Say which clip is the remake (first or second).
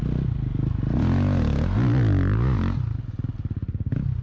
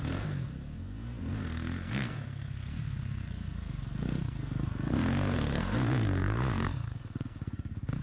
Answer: second